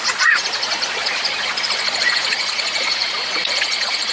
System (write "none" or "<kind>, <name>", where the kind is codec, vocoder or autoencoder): vocoder, Vocos